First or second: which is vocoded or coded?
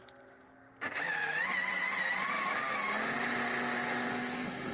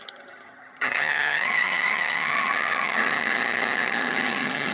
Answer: second